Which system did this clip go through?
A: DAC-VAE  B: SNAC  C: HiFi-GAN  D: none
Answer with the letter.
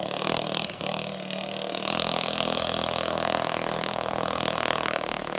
B